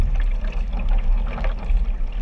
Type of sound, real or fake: real